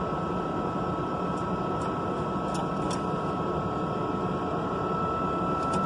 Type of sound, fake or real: real